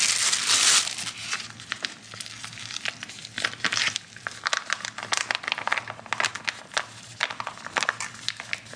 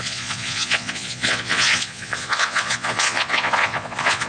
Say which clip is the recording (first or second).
first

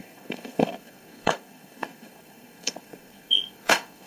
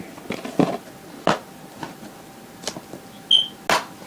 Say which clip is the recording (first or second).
second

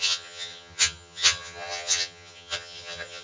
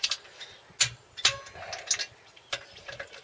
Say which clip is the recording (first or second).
second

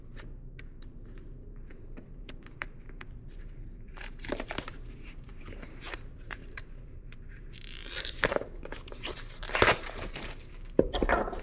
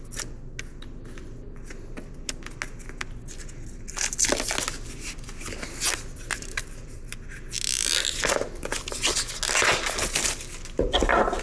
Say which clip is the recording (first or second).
second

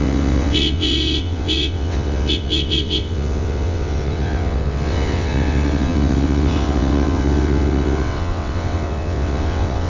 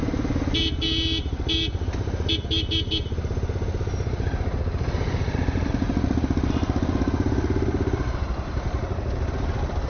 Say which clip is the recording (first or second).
second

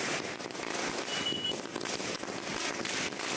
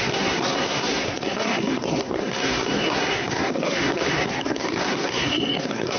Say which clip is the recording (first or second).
first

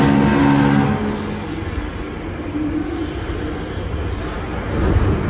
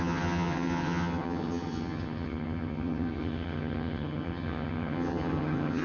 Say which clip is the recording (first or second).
first